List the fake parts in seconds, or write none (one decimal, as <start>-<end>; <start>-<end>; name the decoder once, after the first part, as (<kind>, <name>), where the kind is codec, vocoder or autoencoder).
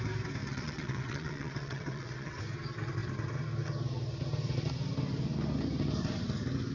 0.4-2.4 (vocoder, WaveNeXt)